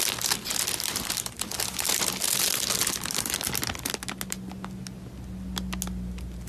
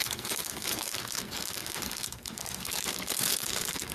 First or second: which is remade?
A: second